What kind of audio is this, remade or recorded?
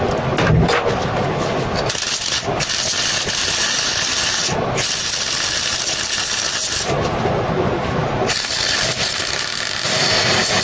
recorded